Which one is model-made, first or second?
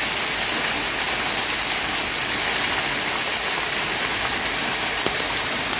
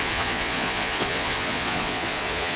second